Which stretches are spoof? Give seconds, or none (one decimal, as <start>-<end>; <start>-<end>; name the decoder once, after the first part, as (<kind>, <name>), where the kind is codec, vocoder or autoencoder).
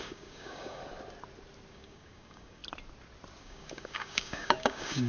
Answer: 0.0-0.8 (codec, DAC); 1.7-2.6; 3.4-5.1